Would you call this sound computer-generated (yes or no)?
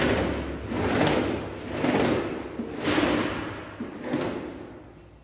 no